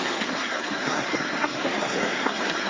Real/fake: fake